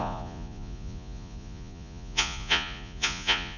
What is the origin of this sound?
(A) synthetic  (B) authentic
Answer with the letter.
A